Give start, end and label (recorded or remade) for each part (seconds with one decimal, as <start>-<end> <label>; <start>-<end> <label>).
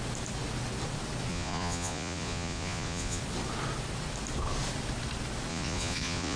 0.0-1.3 recorded; 1.3-3.2 remade; 3.2-5.5 recorded; 5.5-6.4 remade